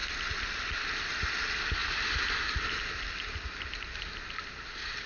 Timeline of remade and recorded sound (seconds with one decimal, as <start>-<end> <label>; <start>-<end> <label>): 0.0-5.1 recorded